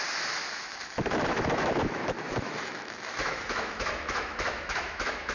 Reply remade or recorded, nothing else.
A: remade